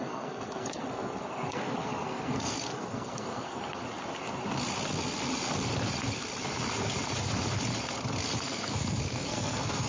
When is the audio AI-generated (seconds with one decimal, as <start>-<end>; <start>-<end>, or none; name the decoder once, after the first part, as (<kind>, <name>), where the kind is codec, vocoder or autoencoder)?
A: 0.0-3.8 (codec, SNAC); 8.4-9.9